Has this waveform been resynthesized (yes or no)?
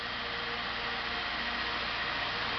no